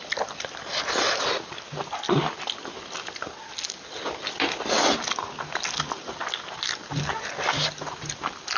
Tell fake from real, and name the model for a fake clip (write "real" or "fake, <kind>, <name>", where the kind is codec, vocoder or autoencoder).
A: real